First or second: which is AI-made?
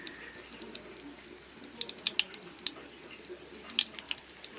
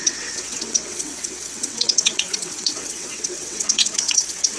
second